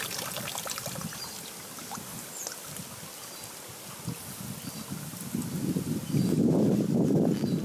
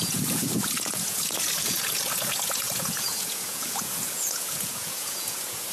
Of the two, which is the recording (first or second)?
first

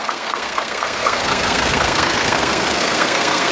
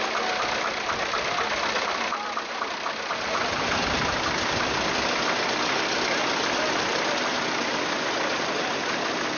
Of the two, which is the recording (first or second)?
second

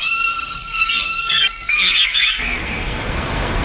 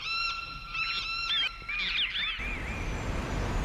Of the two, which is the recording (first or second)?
second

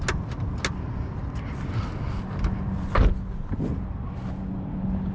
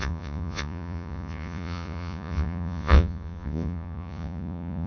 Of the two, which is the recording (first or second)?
first